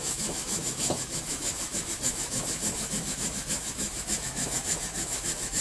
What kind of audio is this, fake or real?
fake